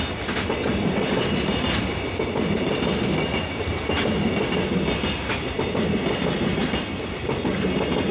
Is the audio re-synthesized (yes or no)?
no